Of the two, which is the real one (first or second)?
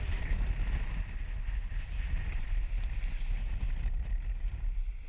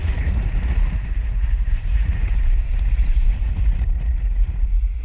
first